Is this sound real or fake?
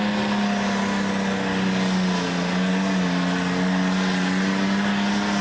real